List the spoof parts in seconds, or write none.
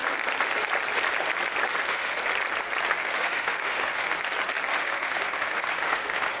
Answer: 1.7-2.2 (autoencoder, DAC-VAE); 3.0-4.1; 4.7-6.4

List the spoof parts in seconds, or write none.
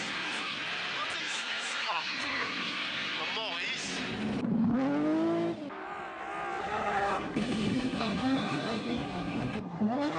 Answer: 0.0-0.6 (codec, SNAC); 1.2-3.2; 6.6-10.2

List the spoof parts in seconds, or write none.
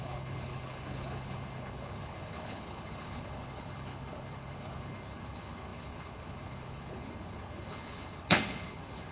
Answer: 0.0-9.1 (codec, HILCodec)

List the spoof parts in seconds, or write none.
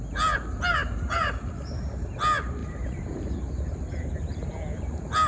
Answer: 0.9-1.7 (vocoder, BigVGAN v2); 2.6-3.2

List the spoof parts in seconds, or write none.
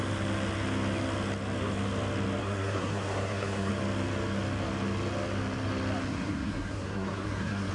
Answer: 2.4-3.7 (codec, SNAC); 6.1-7.7